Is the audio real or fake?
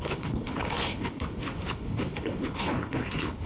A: fake